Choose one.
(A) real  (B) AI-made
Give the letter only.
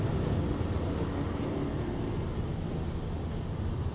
A